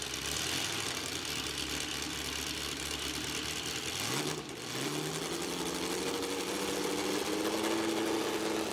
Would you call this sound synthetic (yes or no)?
no